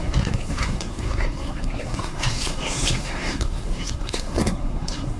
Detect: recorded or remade remade